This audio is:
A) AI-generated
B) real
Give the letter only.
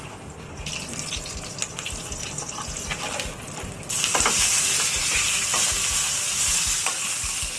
B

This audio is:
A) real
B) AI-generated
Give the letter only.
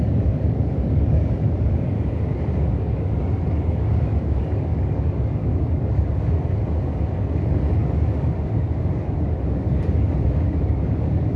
B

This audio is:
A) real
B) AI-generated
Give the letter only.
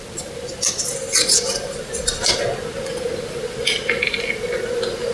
A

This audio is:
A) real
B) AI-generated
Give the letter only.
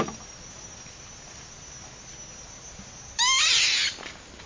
A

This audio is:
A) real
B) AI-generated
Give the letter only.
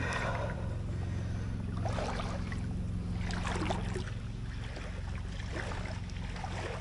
A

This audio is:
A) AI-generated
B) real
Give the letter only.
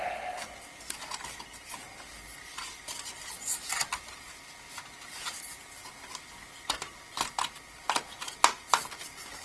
B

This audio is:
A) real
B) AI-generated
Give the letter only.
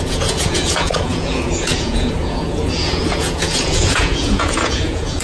B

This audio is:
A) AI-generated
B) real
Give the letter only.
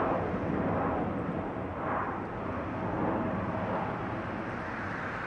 B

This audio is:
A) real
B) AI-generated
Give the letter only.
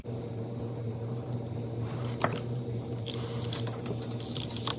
B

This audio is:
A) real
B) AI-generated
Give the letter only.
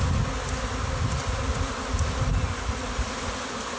A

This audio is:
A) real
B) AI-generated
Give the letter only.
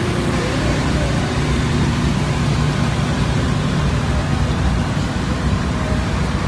A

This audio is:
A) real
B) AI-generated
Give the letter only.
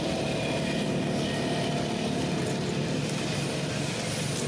B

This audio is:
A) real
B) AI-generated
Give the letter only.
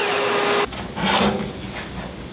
A